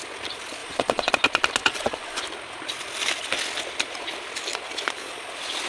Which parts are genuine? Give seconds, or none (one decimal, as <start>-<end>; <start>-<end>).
0.0-0.6; 1.1-1.6; 2.2-5.7